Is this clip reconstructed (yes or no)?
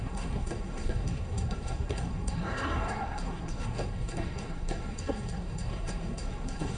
yes